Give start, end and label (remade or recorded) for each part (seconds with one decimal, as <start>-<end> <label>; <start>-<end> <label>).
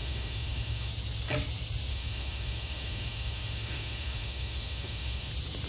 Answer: 0.0-0.9 remade; 0.9-1.9 recorded; 1.9-5.3 remade; 5.3-5.7 recorded